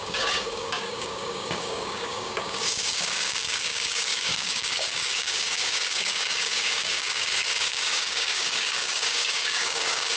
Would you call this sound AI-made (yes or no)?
yes